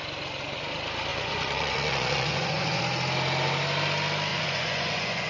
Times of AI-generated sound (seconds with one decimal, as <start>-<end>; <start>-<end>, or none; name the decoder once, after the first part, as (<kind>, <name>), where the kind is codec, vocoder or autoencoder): 1.1-2.8 (vocoder, Vocos); 4.3-5.3